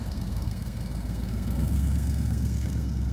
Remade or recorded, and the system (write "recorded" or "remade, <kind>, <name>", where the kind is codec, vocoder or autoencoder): remade, codec, SNAC